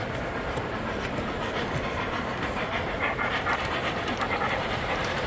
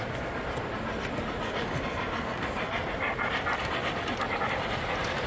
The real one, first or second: second